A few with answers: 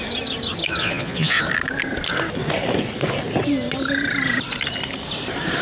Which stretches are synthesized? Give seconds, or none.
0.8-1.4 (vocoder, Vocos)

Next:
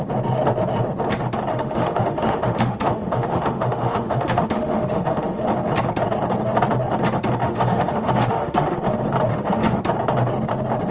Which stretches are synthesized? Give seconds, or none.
1.5-5.4 (autoencoder, DAC-VAE); 7.4-8.8; 9.3-9.8

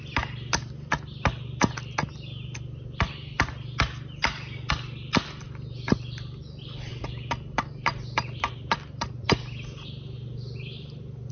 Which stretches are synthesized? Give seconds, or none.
none

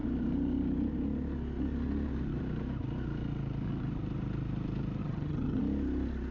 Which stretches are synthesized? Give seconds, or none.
5.0-5.6 (vocoder, HiFi-GAN)

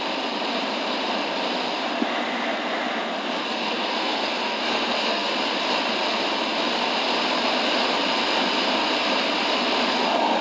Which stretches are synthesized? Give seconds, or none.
3.4-5.3 (codec, SNAC)

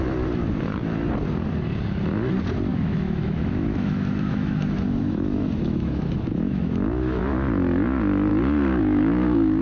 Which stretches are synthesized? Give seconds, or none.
2.7-7.2 (autoencoder, DAC-VAE); 8.3-9.6